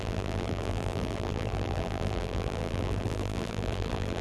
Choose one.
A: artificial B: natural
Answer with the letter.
A